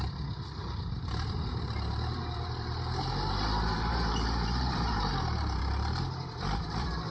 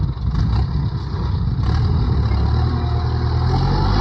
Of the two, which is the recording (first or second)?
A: second